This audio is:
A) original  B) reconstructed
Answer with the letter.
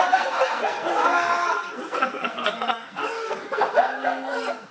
B